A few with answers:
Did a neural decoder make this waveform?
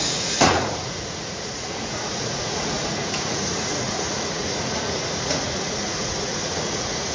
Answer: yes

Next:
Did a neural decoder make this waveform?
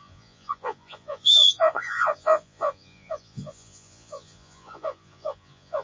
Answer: yes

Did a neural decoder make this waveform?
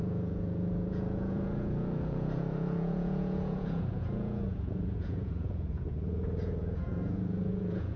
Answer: yes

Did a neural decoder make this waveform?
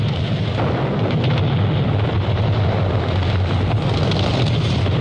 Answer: no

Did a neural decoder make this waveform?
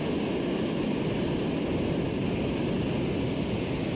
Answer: no